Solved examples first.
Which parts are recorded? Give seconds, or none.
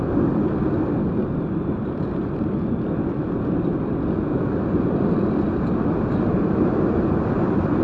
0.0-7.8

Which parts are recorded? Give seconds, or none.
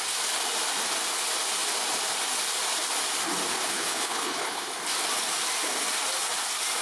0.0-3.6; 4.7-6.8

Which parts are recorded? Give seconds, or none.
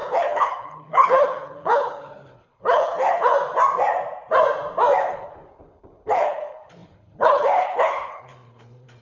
3.3-5.0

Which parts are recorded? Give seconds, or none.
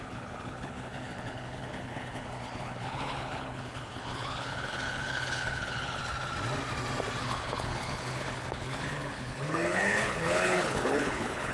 6.0-7.2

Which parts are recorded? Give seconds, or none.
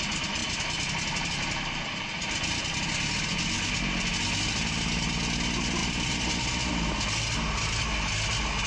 0.0-8.7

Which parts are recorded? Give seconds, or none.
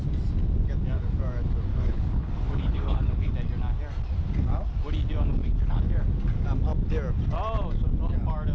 0.0-1.7; 3.3-5.4; 5.9-8.5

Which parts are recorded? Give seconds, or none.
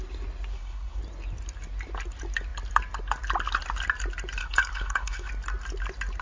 0.0-0.5; 1.0-4.4; 5.3-6.2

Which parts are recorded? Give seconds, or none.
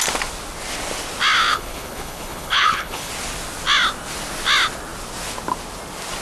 0.0-1.5; 3.1-6.2